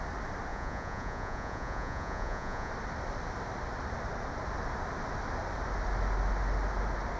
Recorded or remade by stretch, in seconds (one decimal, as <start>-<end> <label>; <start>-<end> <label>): 0.0-0.5 recorded; 0.5-2.7 remade; 2.7-7.2 recorded

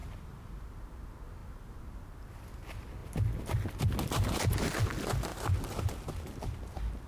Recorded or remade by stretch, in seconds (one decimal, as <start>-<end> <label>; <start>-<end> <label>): 0.0-0.9 remade; 0.9-1.4 recorded; 1.4-2.1 remade; 2.1-7.1 recorded

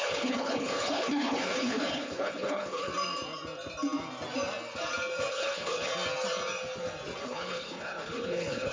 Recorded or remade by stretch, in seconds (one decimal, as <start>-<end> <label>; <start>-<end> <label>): 0.0-2.9 remade; 2.9-5.3 recorded; 5.3-5.9 remade; 5.9-7.2 recorded; 7.2-8.7 remade

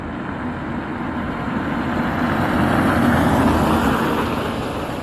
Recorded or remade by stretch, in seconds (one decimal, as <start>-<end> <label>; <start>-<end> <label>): 0.0-0.9 recorded; 0.9-1.9 remade; 1.9-3.8 recorded; 3.8-5.0 remade

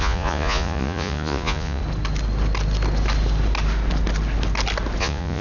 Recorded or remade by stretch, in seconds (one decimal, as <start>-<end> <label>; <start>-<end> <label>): 0.0-1.8 remade; 1.8-5.0 recorded; 5.0-5.4 remade

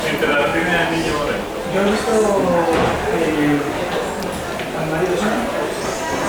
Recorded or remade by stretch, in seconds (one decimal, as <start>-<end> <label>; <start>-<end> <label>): 0.0-6.3 recorded

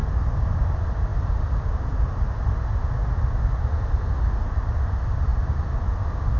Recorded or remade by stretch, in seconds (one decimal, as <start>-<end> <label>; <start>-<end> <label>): 0.0-6.4 recorded

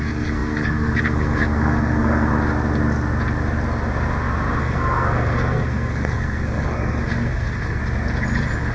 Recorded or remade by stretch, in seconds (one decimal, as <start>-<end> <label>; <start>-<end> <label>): 0.0-2.3 remade; 2.3-4.6 recorded; 4.6-7.8 remade; 7.8-8.7 recorded